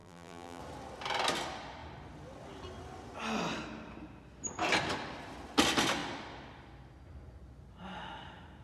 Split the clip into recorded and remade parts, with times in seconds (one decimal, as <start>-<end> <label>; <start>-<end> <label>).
0.0-0.6 remade; 0.6-8.6 recorded